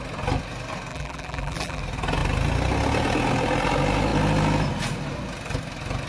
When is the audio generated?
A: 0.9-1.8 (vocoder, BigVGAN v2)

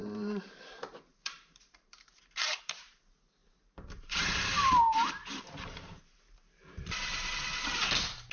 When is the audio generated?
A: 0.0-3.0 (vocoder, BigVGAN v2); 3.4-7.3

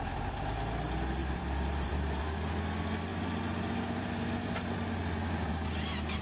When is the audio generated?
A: 1.2-2.2 (vocoder, BigVGAN v2); 3.1-5.5

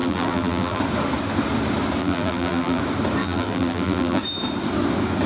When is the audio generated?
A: 0.0-0.8 (vocoder, BigVGAN v2); 2.0-2.8; 3.2-4.2